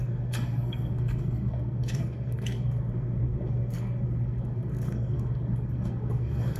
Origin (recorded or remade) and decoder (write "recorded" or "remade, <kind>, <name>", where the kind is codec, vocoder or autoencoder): remade, codec, SNAC